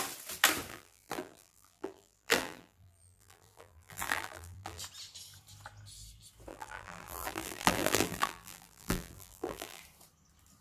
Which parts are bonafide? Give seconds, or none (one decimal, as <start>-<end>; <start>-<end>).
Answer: 0.0-0.7; 4.8-6.5; 9.8-10.6